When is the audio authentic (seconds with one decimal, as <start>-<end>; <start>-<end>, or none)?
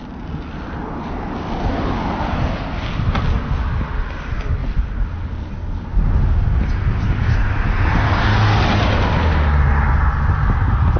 0.0-11.0